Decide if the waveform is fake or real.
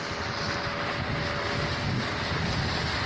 real